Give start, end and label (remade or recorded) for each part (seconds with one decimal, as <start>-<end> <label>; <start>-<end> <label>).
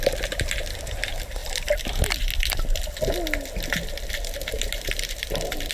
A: 0.0-1.4 remade; 1.4-4.5 recorded; 4.5-5.7 remade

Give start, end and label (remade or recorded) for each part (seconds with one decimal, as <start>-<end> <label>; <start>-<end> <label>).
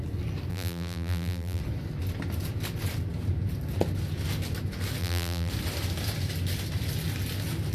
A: 0.0-0.5 recorded; 0.5-1.6 remade; 1.6-5.0 recorded; 5.0-5.5 remade; 5.5-7.7 recorded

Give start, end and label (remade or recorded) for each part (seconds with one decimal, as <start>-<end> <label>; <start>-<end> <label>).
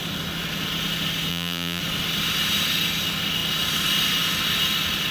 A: 0.0-1.3 recorded; 1.3-1.8 remade; 1.8-5.1 recorded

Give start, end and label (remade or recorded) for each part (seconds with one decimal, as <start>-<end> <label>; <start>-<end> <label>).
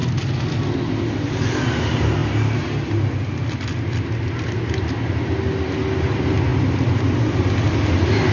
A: 0.0-8.3 recorded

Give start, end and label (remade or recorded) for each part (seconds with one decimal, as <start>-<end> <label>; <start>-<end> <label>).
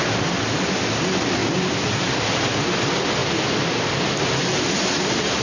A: 0.0-1.4 recorded; 1.4-2.5 remade; 2.5-3.2 recorded; 3.2-3.8 remade; 3.8-5.4 recorded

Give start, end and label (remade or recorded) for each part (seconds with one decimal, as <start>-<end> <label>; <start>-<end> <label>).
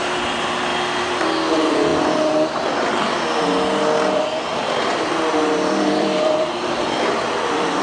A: 0.0-0.7 remade; 0.7-1.5 recorded; 1.5-1.9 remade; 1.9-4.6 recorded; 4.6-7.8 remade